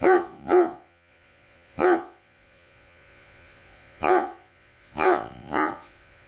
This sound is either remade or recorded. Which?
remade